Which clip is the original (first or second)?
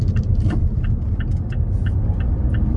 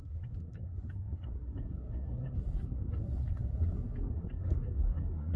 first